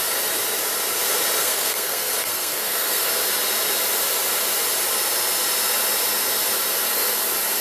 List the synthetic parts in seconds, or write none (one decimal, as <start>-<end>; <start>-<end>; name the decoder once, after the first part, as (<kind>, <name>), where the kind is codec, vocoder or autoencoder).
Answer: 1.4-3.1 (codec, SNAC)